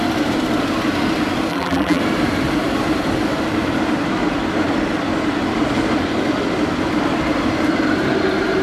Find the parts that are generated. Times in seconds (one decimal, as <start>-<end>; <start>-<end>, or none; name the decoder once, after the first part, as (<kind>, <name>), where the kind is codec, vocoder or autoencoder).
1.5-2.0 (vocoder, BigVGAN v2)